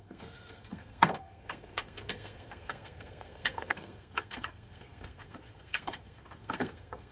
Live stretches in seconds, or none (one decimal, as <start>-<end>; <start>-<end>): none